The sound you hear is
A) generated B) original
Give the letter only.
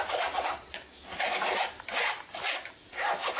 B